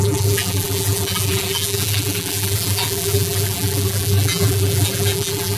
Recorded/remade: remade